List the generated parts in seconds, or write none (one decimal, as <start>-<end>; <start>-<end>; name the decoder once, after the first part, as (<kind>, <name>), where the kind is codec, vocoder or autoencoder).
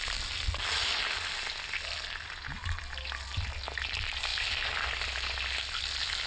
none